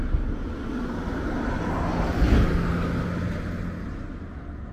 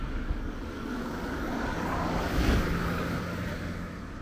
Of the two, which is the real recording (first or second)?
first